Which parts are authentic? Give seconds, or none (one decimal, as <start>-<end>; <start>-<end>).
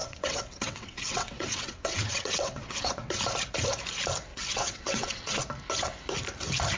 3.2-4.3; 5.4-6.8